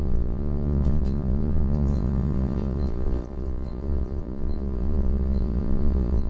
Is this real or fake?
fake